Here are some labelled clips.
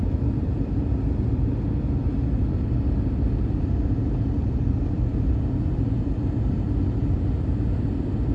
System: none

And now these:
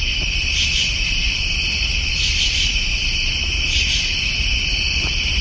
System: none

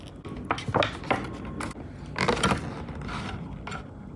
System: none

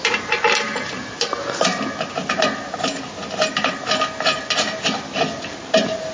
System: none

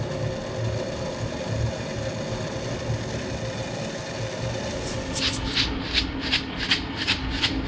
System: none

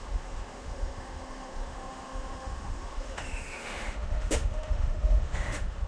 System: autoencoder, DAC-VAE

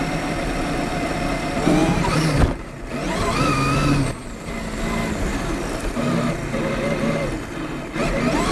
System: none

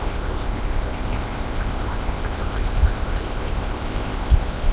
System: codec, ZipCodec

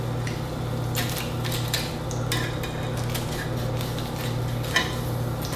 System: none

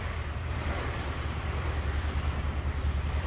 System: none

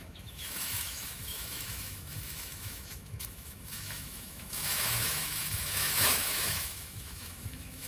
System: autoencoder, DAC-VAE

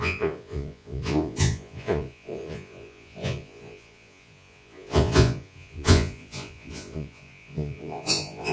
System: vocoder, Vocos